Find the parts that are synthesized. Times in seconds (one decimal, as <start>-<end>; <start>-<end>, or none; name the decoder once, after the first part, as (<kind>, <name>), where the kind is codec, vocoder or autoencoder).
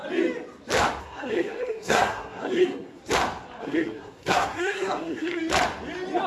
1.0-3.0 (codec, SNAC); 3.6-5.4